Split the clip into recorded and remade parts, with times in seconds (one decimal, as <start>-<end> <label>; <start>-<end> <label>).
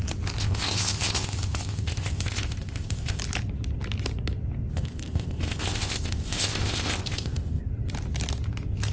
0.0-0.4 recorded; 0.4-3.2 remade; 3.2-4.7 recorded; 4.7-7.6 remade; 7.6-8.9 recorded